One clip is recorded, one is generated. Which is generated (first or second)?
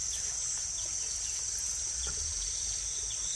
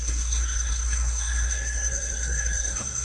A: second